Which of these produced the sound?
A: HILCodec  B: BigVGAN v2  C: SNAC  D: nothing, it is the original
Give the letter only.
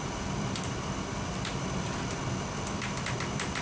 B